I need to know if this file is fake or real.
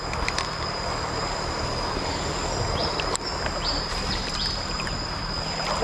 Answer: real